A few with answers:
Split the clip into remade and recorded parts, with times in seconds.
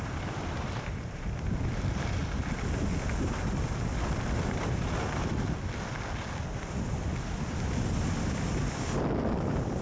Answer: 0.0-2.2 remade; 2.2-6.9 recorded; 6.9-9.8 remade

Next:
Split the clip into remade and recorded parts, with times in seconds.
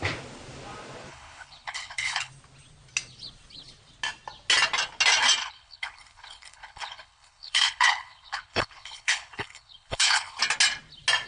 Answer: 0.0-1.1 recorded; 1.1-2.3 remade; 2.3-5.4 recorded; 5.4-10.4 remade; 10.4-11.3 recorded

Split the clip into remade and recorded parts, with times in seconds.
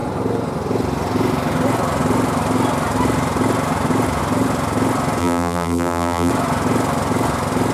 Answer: 0.0-5.2 recorded; 5.2-6.3 remade; 6.3-7.7 recorded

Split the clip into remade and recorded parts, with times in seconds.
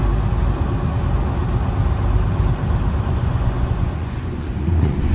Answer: 0.0-3.1 recorded; 3.1-5.1 remade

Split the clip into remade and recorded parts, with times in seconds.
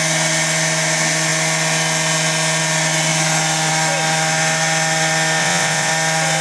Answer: 0.0-5.4 recorded; 5.4-5.9 remade; 5.9-6.4 recorded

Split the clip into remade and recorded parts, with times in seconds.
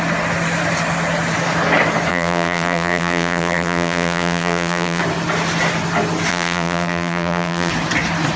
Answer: 0.0-2.1 recorded; 2.1-5.0 remade; 5.0-6.3 recorded; 6.3-7.7 remade; 7.7-8.4 recorded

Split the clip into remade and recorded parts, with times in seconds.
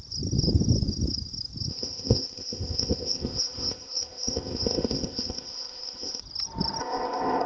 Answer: 0.0-1.7 recorded; 1.7-6.2 remade; 6.2-6.8 recorded; 6.8-7.5 remade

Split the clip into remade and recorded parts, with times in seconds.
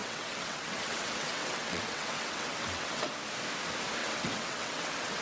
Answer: 0.0-3.1 remade; 3.1-4.0 recorded; 4.0-5.2 remade